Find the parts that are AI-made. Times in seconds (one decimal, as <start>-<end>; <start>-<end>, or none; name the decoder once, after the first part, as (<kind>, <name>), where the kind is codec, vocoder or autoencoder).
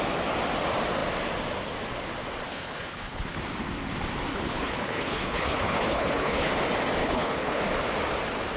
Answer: 2.5-3.4 (codec, HILCodec); 4.3-6.5; 7.0-7.6